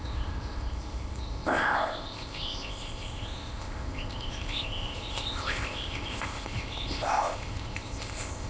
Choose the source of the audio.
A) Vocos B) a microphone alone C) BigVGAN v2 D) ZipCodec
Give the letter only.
D